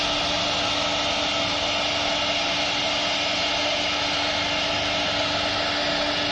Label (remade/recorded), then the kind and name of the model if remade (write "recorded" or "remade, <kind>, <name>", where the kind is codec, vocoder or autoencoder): recorded